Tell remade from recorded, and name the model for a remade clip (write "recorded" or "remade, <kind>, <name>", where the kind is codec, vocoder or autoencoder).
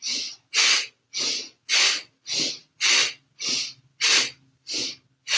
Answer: recorded